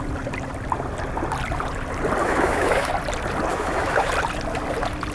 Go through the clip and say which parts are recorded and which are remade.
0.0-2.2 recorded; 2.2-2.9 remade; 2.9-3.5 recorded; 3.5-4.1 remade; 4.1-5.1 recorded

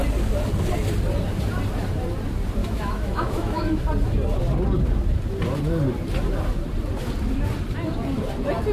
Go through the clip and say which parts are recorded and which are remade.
0.0-2.6 recorded; 2.6-3.8 remade; 3.8-8.7 recorded

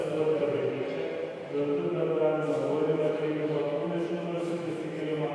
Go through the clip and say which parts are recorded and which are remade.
0.0-0.6 remade; 0.6-1.9 recorded; 1.9-5.3 remade

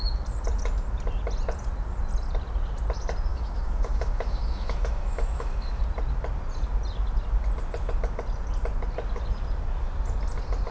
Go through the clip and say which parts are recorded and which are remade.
0.0-3.3 recorded; 3.3-5.8 remade; 5.8-10.7 recorded

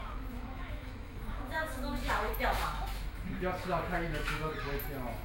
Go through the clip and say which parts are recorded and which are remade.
0.0-2.6 remade; 2.6-3.6 recorded; 3.6-4.5 remade; 4.5-5.2 recorded

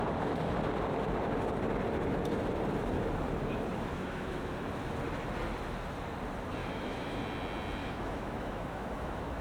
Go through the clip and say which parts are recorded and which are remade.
0.0-3.9 recorded; 3.9-4.5 remade; 4.5-6.6 recorded; 6.6-7.2 remade; 7.2-7.8 recorded; 7.8-9.4 remade

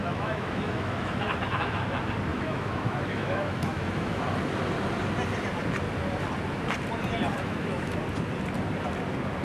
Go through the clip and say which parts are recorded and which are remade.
0.0-1.8 remade; 1.8-2.3 recorded; 2.3-4.2 remade; 4.2-7.3 recorded; 7.3-8.0 remade; 8.0-9.4 recorded